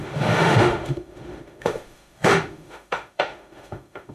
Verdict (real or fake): fake